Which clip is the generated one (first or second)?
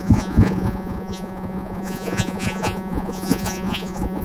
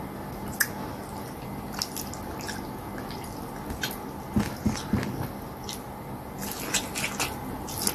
first